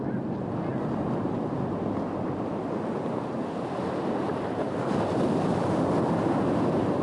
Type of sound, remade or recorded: recorded